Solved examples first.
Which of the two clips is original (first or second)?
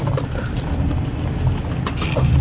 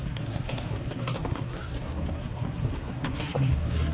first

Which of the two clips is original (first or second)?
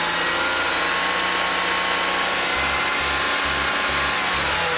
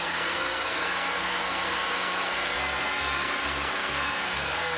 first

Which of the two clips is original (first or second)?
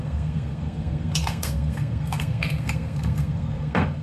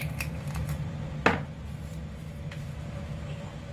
second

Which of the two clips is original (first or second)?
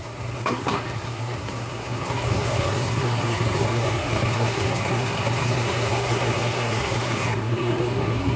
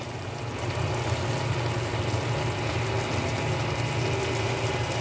second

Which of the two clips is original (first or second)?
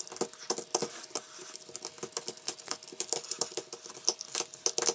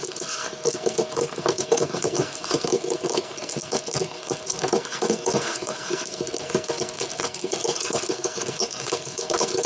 first